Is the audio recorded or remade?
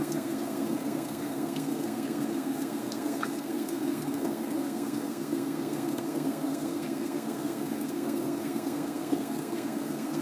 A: remade